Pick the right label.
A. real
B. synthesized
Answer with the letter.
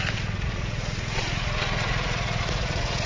B